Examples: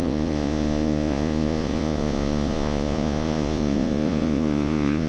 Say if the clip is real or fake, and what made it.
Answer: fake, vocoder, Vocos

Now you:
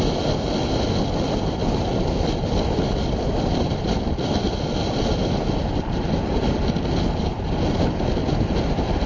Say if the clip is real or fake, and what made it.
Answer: real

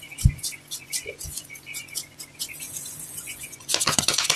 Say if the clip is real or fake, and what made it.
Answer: fake, vocoder, Vocos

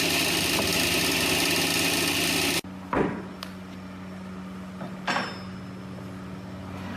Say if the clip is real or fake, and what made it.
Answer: real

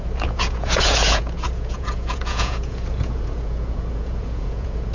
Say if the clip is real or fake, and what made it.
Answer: fake, vocoder, Vocos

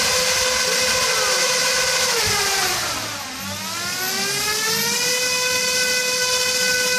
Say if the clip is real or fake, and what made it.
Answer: real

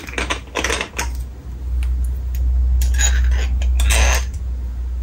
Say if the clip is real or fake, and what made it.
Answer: real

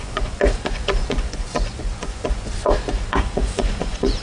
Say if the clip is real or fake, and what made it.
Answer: fake, vocoder, Vocos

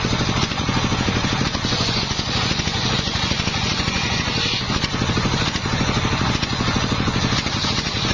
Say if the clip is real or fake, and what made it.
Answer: fake, vocoder, Vocos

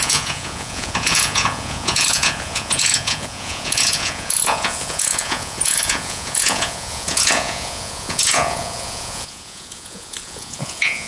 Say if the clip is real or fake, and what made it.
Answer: fake, vocoder, Vocos